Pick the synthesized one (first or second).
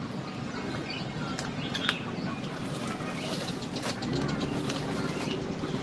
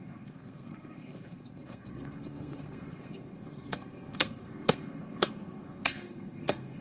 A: second